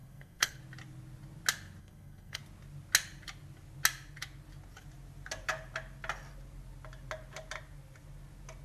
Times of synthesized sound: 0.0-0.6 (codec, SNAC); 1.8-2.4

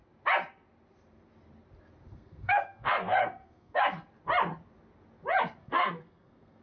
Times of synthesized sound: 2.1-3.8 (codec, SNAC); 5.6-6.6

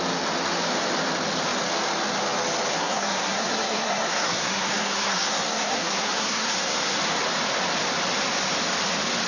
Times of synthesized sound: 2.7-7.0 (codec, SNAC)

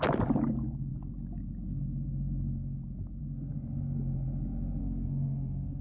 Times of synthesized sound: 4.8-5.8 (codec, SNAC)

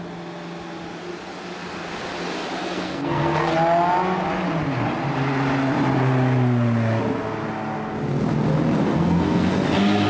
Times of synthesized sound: 2.6-3.5 (codec, SNAC); 8.9-9.5